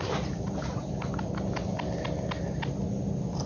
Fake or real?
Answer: real